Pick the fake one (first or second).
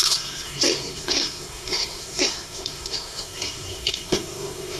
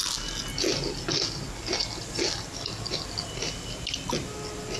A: first